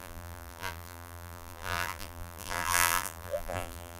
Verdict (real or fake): fake